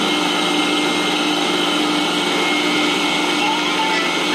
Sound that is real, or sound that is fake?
real